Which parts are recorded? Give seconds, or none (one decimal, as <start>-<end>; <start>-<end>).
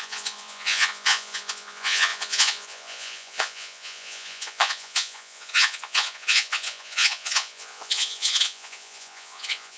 none